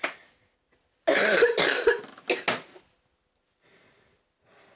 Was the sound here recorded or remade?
recorded